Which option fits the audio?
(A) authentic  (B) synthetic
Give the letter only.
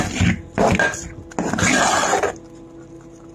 A